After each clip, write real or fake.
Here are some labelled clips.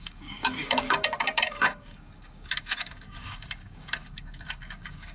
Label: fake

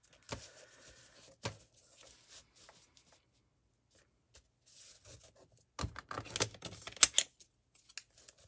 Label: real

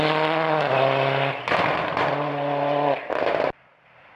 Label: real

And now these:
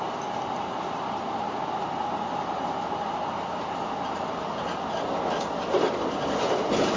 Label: real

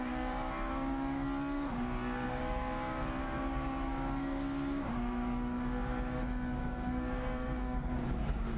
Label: fake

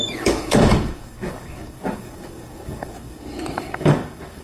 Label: fake